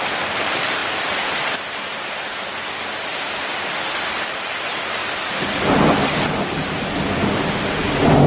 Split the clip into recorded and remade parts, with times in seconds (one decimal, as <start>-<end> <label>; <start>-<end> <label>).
0.0-8.3 recorded